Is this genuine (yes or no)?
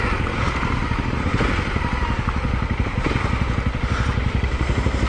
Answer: yes